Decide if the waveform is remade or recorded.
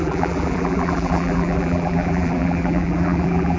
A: remade